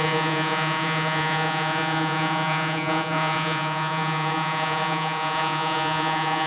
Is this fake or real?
fake